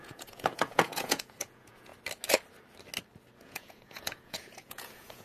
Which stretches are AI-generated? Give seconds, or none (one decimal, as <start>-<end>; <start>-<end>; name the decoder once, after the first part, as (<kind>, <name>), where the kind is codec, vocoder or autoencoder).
0.0-1.9 (vocoder, Vocos); 3.4-5.2